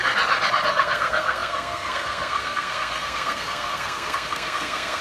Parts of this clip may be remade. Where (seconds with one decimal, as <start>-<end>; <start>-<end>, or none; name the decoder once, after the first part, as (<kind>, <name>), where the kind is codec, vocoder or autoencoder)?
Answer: 0.7-5.0 (codec, SNAC)